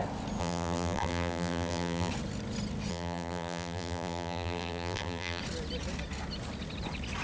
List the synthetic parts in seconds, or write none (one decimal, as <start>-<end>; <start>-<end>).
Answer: 0.4-2.1; 2.9-5.4

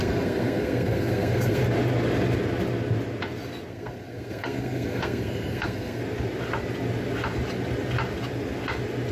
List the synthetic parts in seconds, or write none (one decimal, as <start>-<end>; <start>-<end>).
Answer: 0.0-1.6; 3.7-6.0

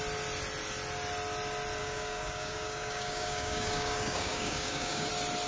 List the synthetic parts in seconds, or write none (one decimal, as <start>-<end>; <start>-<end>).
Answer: 1.8-5.1